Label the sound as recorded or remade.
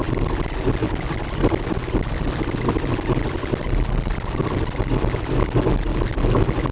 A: recorded